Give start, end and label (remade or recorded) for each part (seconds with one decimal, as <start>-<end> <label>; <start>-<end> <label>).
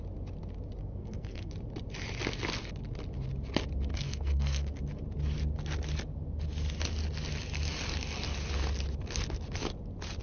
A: 0.0-0.8 recorded; 0.8-1.5 remade; 1.5-3.9 recorded; 3.9-4.8 remade; 4.8-10.2 recorded